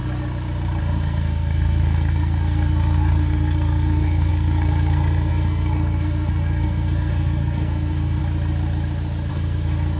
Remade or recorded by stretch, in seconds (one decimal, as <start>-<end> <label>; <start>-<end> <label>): 0.0-0.8 recorded; 0.8-8.2 remade; 8.2-9.3 recorded; 9.3-10.0 remade